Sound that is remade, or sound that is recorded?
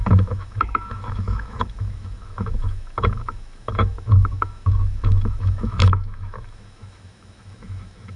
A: remade